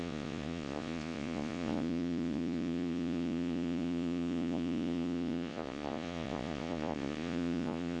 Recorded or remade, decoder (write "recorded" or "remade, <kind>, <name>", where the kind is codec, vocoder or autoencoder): remade, vocoder, Vocos